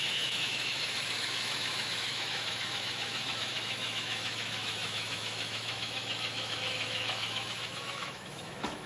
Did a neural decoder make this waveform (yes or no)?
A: yes